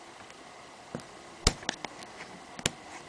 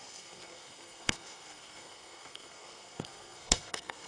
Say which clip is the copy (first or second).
second